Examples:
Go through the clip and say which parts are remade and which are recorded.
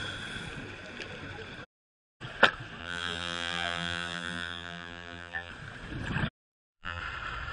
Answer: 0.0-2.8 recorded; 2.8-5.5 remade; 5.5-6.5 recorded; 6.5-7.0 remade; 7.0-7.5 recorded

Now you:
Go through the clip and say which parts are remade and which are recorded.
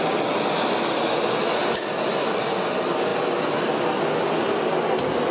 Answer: 0.0-5.3 recorded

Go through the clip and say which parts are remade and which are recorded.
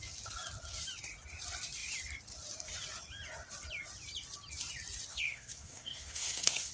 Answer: 0.0-5.1 recorded; 5.1-6.7 remade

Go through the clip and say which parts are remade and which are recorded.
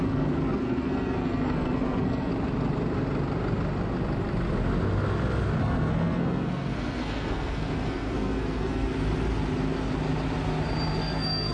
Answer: 0.0-2.3 remade; 2.3-5.6 recorded; 5.6-8.9 remade; 8.9-11.0 recorded; 11.0-11.5 remade